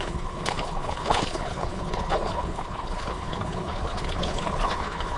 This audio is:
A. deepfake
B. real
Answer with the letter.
A